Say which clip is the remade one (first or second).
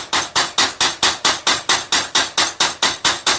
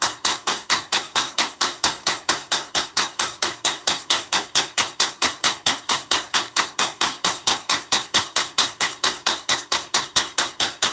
second